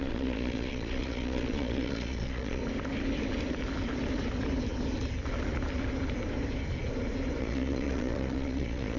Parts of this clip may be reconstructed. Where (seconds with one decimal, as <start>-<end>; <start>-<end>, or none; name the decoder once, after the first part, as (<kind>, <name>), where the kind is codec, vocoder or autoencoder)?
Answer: 0.0-2.6 (vocoder, Vocos); 7.4-9.0